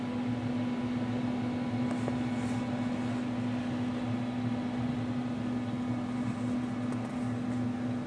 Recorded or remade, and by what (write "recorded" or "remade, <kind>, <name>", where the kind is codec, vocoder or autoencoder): recorded